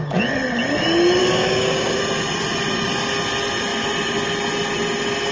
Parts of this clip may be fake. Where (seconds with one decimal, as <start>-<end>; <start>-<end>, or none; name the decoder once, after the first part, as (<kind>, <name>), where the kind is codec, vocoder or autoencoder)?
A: 1.2-2.0 (codec, DAC)